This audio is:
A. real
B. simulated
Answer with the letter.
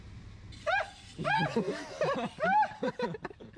A